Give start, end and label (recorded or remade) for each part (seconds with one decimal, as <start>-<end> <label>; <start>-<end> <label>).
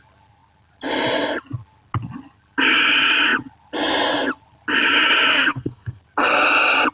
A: 0.0-5.3 recorded; 5.3-6.0 remade; 6.0-6.9 recorded